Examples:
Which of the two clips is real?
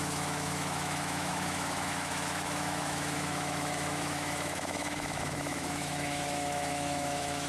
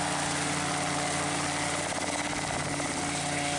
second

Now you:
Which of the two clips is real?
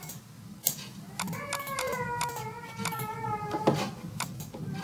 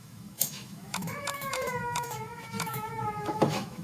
first